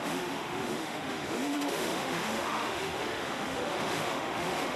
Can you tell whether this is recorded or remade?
remade